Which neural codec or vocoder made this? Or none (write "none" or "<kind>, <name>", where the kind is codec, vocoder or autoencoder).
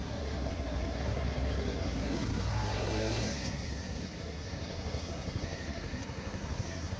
codec, SNAC